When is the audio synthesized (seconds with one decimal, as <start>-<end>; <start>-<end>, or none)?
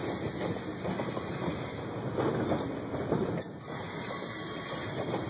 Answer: none